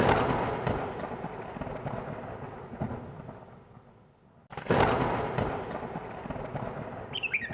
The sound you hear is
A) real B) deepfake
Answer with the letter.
A